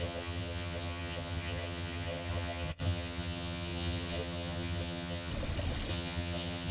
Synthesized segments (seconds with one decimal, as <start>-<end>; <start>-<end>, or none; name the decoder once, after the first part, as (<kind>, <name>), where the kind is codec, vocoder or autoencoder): 0.0-5.3 (vocoder, HiFi-GAN); 5.9-6.7